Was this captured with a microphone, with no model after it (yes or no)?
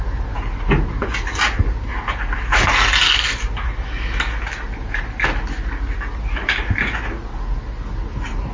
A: yes